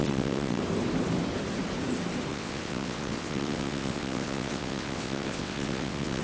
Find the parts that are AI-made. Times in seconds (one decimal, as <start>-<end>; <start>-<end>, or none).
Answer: 0.0-0.6; 2.3-6.2